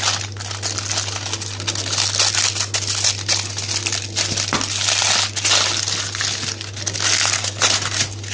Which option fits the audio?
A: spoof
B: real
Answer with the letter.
B